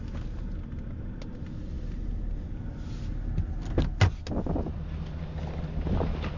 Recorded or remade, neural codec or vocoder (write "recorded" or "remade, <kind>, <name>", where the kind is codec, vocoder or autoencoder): recorded